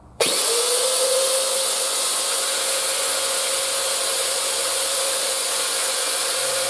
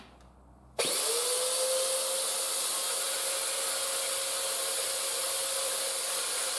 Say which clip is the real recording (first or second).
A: second